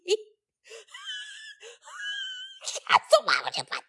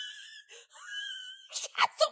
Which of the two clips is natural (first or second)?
first